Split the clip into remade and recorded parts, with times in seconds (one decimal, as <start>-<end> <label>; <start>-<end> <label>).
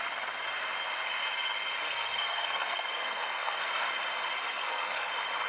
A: 0.0-1.8 recorded; 1.8-3.9 remade; 3.9-4.4 recorded; 4.4-5.1 remade; 5.1-5.5 recorded